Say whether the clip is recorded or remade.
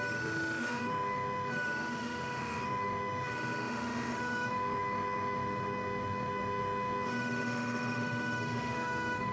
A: remade